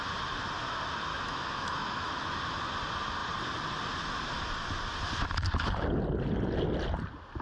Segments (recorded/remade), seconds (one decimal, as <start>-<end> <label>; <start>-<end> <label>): 0.0-1.1 recorded; 1.1-2.4 remade; 2.4-7.4 recorded